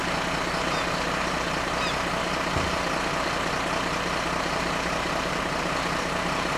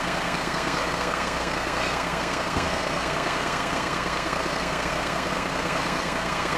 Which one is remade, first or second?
second